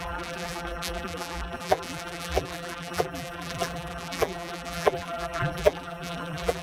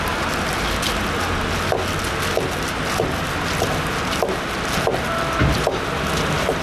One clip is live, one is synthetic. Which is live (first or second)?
second